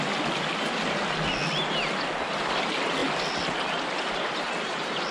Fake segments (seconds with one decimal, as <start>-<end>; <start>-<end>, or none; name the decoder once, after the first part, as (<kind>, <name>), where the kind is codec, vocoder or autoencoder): none